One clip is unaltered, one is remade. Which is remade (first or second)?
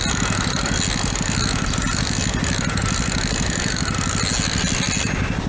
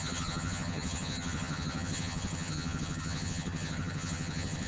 second